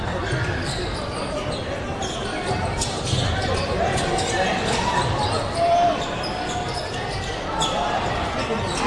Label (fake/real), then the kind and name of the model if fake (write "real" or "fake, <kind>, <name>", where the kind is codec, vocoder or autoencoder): real